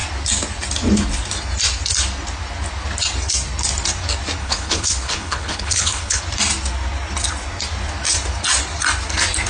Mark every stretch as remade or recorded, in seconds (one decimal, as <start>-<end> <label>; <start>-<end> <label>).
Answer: 0.0-4.4 recorded; 4.4-6.2 remade; 6.2-9.5 recorded